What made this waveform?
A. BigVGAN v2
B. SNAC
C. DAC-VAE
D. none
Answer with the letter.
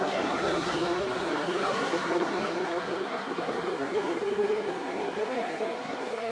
B